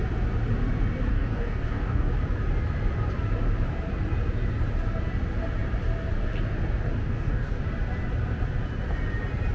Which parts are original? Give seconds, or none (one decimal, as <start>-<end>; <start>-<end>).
0.0-1.1; 2.1-7.0; 7.6-9.5